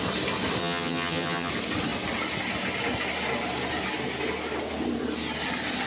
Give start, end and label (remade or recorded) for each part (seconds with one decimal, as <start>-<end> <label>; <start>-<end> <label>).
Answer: 0.0-0.6 recorded; 0.6-1.5 remade; 1.5-5.9 recorded